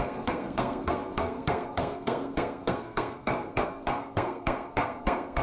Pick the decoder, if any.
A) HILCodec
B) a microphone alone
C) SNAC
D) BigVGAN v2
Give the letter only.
C